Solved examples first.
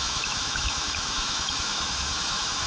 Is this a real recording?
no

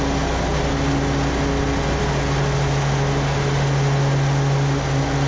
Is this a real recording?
yes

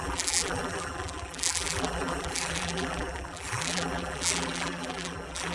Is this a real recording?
no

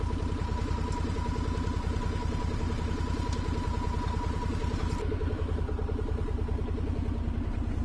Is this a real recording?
yes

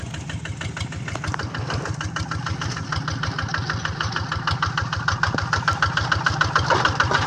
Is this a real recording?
yes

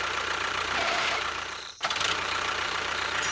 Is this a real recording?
no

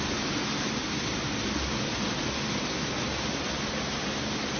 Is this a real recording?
yes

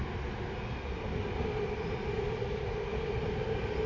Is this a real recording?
yes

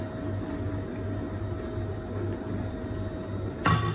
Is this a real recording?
yes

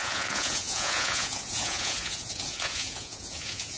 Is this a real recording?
no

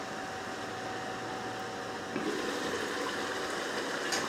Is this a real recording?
yes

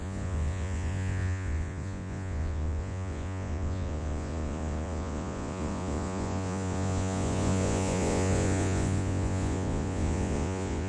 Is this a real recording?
no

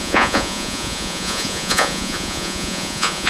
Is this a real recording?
no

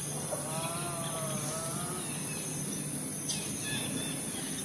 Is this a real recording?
yes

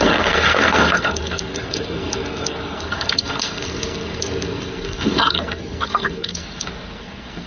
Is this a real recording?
no